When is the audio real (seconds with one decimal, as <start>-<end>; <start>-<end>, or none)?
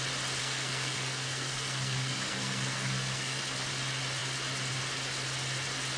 0.0-0.4; 3.4-6.0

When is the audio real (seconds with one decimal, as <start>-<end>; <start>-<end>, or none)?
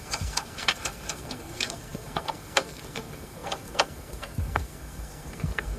none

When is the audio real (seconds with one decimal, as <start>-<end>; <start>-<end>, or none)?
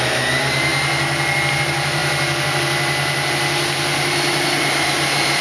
0.0-5.4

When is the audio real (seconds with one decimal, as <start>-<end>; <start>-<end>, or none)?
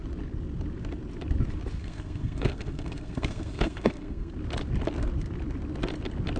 0.0-1.8; 4.3-6.4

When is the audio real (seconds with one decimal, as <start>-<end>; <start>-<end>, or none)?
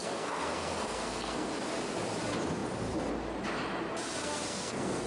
1.5-4.2